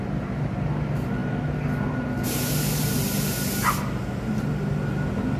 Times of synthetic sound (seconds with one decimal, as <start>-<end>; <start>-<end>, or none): none